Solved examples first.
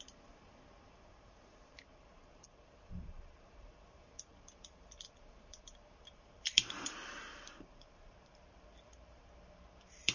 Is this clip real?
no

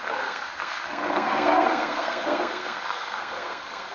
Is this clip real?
no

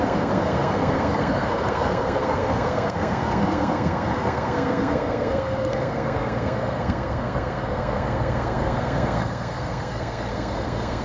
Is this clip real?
no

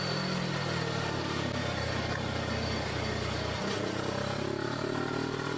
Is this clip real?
yes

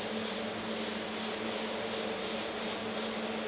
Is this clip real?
yes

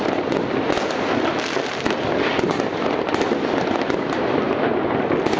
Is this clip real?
yes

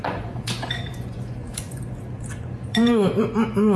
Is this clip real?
no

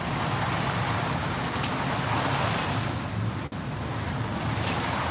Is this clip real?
yes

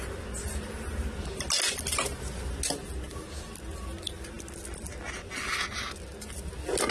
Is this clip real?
yes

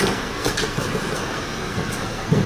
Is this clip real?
no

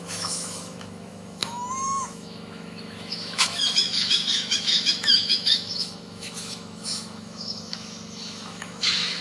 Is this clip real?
no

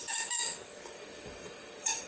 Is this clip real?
no